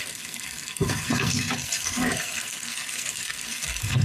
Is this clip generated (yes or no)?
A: yes